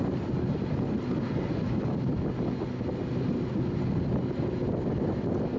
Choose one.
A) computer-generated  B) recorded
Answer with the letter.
B